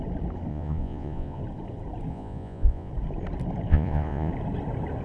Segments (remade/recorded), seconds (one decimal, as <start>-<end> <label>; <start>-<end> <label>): 0.0-0.5 recorded; 0.5-1.4 remade; 1.4-2.1 recorded; 2.1-2.9 remade; 2.9-3.7 recorded; 3.7-4.3 remade; 4.3-5.0 recorded